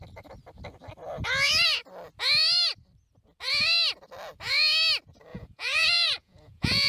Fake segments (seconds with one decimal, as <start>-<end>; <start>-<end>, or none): 5.3-6.9